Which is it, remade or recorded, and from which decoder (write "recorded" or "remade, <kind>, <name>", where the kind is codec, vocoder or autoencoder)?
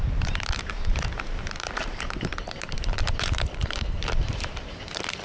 remade, vocoder, BigVGAN v2